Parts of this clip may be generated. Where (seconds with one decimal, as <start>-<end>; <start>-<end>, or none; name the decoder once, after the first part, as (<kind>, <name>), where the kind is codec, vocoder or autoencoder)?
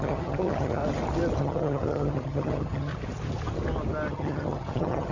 0.0-0.8 (vocoder, HiFi-GAN); 1.4-2.9; 4.1-5.1